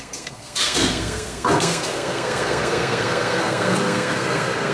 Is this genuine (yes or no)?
no